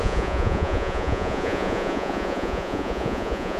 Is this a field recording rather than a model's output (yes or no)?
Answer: no